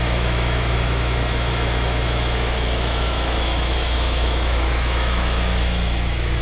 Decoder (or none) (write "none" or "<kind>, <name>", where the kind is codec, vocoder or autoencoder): autoencoder, DAC-VAE